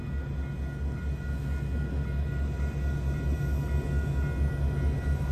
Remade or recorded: recorded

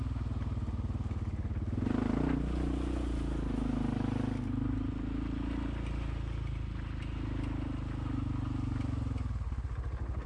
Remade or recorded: recorded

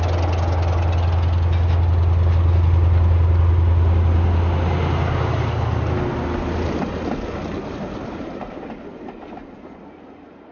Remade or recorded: recorded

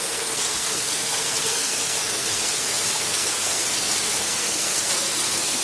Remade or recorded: remade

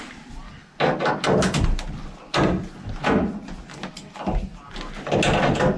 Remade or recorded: recorded